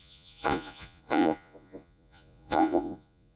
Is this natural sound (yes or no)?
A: no